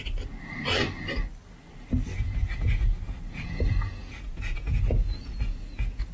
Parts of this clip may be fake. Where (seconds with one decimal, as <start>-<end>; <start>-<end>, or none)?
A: 2.1-6.1